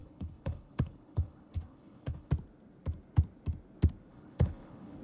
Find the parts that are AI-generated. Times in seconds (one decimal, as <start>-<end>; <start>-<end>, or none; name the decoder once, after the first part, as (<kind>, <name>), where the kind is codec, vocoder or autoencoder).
0.0-2.3 (codec, HILCodec); 4.1-5.0